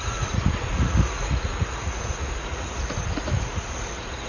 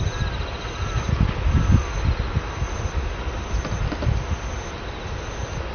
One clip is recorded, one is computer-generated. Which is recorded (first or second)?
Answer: second